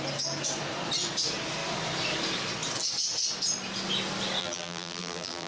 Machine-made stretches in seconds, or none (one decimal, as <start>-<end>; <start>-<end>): 4.4-5.5